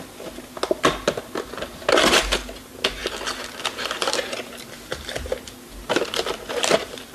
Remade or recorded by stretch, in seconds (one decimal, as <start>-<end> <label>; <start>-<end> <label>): 0.0-7.1 recorded